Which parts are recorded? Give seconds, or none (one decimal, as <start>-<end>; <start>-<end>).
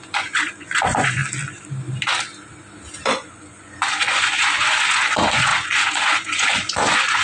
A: 1.2-3.0